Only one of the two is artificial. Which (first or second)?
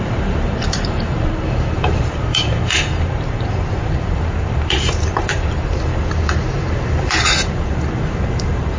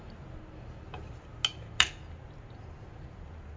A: first